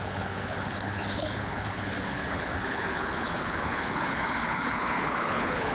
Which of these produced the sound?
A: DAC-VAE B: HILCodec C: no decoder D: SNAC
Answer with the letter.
B